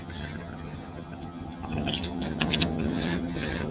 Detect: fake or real fake